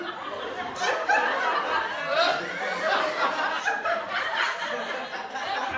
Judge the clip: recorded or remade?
recorded